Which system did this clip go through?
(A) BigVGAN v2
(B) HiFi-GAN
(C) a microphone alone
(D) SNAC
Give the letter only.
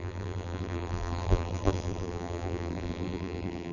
A